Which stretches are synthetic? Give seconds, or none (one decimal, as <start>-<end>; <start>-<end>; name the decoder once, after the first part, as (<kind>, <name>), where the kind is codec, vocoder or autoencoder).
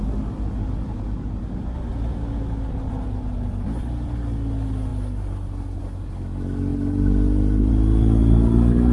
none